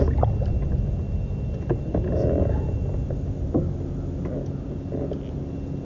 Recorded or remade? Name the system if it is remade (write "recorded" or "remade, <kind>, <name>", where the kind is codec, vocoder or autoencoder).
recorded